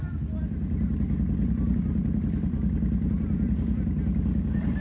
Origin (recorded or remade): recorded